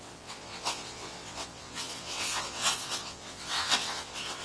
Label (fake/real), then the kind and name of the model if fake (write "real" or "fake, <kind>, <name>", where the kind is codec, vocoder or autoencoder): fake, vocoder, WaveNeXt